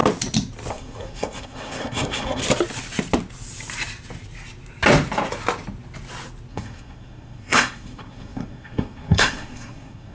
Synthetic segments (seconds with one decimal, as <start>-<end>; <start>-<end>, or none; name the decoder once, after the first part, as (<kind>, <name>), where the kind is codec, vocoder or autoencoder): 0.7-2.4 (codec, SNAC); 6.5-10.1